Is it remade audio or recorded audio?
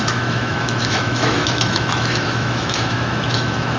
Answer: remade